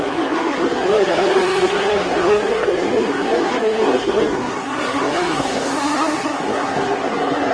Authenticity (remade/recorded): remade